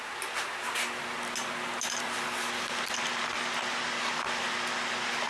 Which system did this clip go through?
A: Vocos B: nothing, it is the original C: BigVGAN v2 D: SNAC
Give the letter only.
B